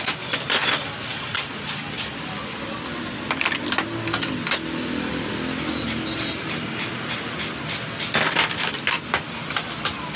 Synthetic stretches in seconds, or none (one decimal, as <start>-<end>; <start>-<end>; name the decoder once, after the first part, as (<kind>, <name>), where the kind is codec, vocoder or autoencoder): none